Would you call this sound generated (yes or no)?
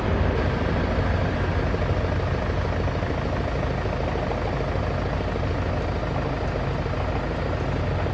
no